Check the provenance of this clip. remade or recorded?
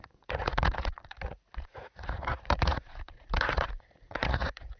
remade